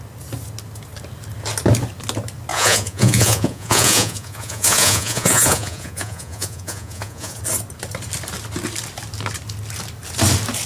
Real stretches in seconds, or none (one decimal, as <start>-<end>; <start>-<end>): 0.0-2.5; 7.4-10.7